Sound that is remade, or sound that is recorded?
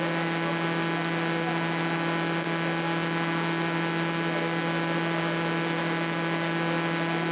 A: recorded